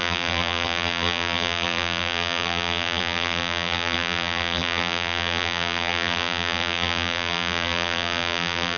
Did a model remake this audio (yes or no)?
yes